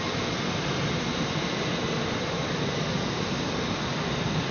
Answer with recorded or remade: recorded